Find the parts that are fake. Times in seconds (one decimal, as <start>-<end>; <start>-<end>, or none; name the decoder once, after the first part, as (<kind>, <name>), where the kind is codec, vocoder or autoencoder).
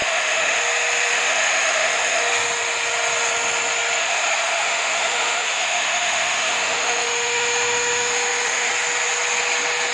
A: 0.0-0.6 (autoencoder, DAC-VAE); 1.1-2.2; 4.0-8.7